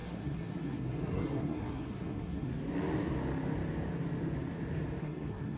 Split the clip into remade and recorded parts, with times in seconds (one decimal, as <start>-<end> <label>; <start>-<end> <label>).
0.0-2.5 remade; 2.5-5.0 recorded; 5.0-5.6 remade